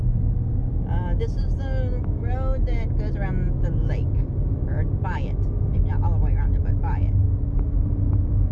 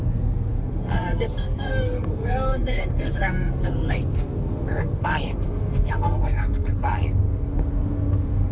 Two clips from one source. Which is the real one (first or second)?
first